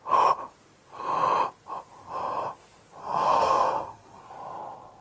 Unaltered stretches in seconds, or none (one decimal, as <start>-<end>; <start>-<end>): 0.0-3.0; 4.2-5.0